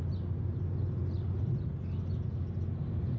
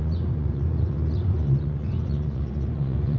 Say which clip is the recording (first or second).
first